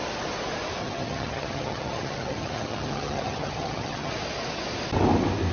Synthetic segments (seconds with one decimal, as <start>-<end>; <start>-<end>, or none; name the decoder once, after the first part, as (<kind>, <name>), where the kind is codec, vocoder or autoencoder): 0.8-4.1 (vocoder, HiFi-GAN)